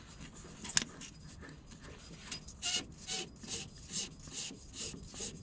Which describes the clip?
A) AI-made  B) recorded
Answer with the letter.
B